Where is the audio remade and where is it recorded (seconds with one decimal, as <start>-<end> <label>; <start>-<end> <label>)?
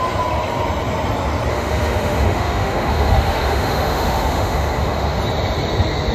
0.0-1.5 recorded; 1.5-5.2 remade; 5.2-6.1 recorded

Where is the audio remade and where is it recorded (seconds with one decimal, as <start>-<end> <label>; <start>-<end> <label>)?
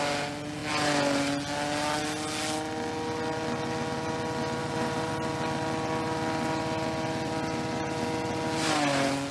0.0-4.6 recorded; 4.6-5.1 remade; 5.1-9.3 recorded